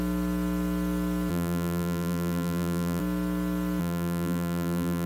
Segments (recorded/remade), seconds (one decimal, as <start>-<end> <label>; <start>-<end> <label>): 0.0-1.3 recorded; 1.3-3.0 remade; 3.0-3.8 recorded; 3.8-5.1 remade